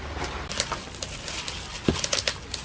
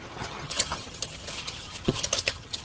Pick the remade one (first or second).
second